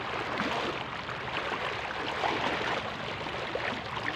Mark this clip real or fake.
real